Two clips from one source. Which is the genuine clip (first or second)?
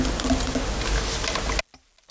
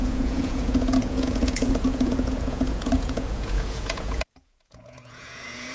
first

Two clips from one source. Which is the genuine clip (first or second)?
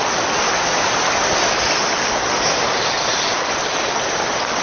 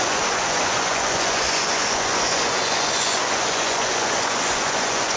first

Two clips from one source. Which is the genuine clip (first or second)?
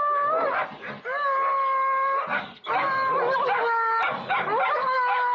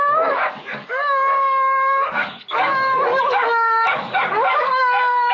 first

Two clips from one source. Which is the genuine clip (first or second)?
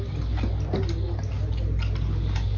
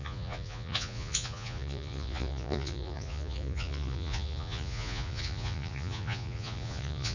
first